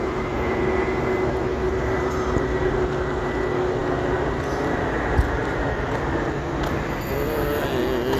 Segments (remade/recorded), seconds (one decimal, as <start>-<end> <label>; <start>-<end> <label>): 0.0-8.2 recorded